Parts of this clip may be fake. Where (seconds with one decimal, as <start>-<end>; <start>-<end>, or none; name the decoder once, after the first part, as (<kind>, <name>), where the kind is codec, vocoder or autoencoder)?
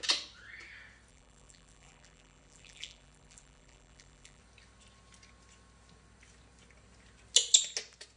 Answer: 1.1-4.4 (vocoder, BigVGAN v2)